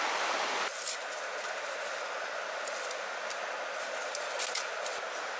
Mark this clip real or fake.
real